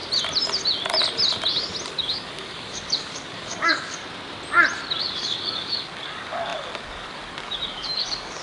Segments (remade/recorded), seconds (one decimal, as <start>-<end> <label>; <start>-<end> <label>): 0.0-1.9 recorded; 1.9-4.0 remade; 4.0-5.0 recorded; 5.0-8.4 remade